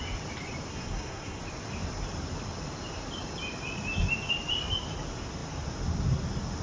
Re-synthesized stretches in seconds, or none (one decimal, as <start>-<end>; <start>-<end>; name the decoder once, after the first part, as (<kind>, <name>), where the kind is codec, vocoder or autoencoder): 0.7-1.4 (codec, SNAC)